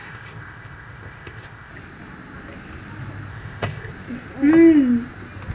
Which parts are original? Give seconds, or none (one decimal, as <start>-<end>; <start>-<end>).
1.7-3.3; 3.9-5.5